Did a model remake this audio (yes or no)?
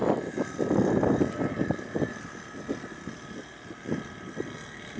no